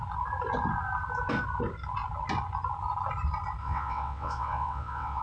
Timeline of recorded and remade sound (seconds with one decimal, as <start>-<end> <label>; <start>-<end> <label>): 0.0-3.6 recorded; 3.6-5.2 remade